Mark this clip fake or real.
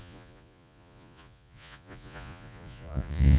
fake